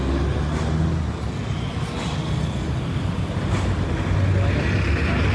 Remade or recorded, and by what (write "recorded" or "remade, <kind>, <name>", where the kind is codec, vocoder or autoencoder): recorded